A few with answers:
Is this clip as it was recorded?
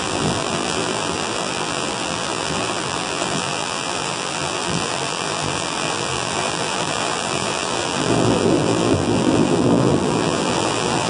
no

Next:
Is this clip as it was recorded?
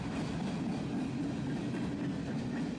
yes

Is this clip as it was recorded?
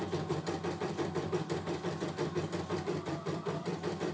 no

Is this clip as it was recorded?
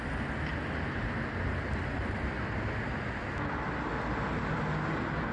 yes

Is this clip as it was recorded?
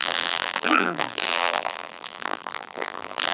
no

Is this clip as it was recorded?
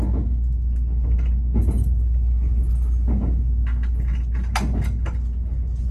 yes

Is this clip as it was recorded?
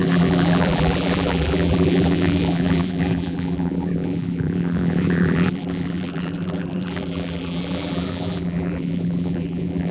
no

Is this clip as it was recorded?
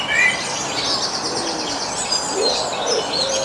yes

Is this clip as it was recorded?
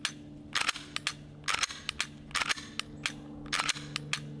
yes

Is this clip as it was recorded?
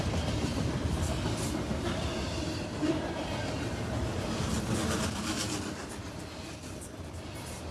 no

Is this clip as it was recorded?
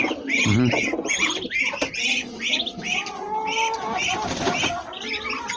yes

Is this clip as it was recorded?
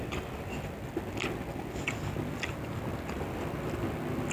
yes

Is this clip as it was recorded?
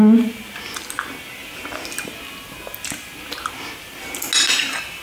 yes